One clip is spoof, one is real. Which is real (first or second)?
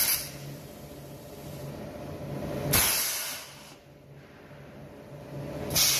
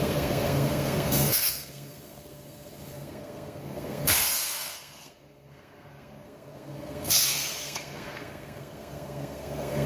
first